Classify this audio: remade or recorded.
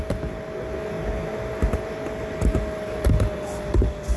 recorded